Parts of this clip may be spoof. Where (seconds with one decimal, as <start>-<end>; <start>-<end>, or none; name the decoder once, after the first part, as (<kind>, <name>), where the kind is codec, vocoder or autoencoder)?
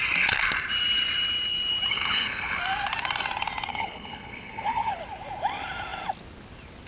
1.9-2.6 (codec, HILCodec); 3.7-5.0